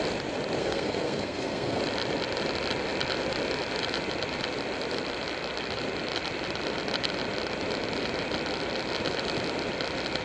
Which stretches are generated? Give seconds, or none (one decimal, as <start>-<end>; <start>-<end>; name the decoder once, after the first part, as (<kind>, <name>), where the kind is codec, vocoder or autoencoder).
0.6-1.8 (codec, SNAC)